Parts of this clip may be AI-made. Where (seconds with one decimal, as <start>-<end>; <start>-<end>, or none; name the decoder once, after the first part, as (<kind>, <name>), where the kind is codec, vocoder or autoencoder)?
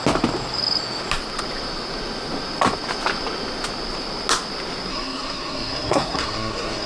4.9-6.9 (codec, SNAC)